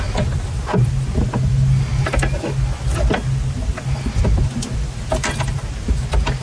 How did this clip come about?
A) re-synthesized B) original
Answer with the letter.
B